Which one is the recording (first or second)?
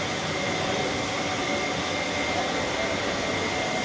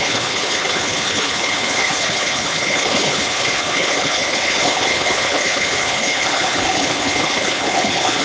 first